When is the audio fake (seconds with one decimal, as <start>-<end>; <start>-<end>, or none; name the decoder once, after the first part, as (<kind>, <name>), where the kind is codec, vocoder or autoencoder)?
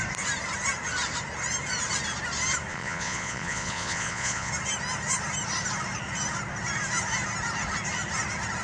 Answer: 2.7-4.5 (vocoder, Vocos)